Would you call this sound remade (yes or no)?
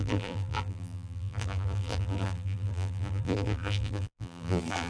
yes